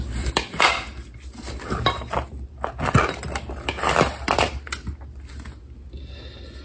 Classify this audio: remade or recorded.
recorded